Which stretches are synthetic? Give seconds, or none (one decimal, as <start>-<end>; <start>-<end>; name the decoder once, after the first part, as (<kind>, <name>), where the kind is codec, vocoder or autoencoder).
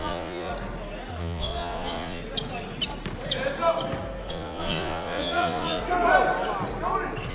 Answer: 0.0-0.5 (vocoder, Vocos); 1.2-2.2; 4.3-5.8